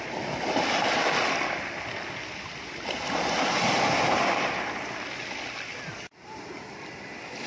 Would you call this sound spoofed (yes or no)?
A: no